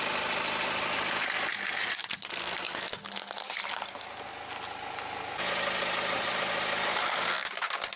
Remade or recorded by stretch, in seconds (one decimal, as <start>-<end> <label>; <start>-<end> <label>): 0.0-8.0 recorded